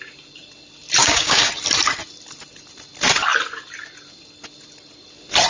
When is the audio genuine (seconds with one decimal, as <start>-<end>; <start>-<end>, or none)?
0.0-1.0; 1.5-5.5